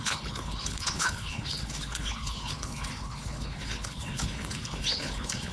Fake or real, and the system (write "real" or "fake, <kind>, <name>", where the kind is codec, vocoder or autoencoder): fake, codec, HILCodec